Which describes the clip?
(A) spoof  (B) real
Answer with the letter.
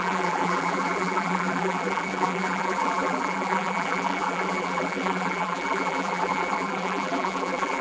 A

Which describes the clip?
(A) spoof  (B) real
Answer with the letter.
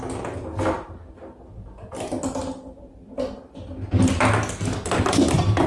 B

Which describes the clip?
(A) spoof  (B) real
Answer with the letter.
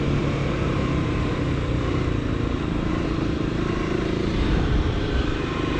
A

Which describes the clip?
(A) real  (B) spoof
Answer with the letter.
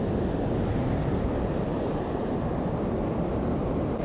A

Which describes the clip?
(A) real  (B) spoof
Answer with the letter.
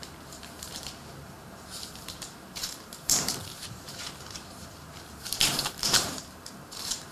B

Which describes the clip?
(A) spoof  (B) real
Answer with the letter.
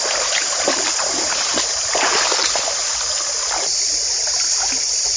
A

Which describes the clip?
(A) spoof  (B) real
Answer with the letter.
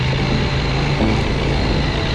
B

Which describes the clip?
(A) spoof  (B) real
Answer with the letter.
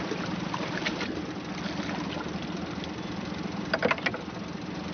B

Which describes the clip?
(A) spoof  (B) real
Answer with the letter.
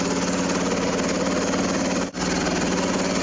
B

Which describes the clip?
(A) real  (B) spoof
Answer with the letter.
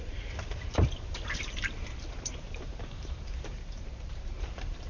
B